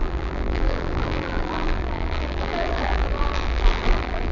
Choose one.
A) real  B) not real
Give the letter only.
B